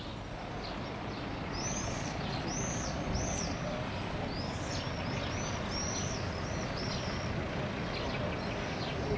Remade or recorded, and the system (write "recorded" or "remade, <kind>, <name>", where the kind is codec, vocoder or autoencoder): recorded